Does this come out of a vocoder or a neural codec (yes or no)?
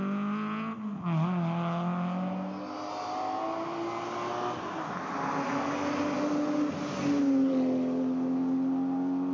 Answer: no